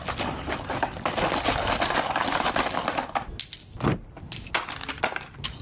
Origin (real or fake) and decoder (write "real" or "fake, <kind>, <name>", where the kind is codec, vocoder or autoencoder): real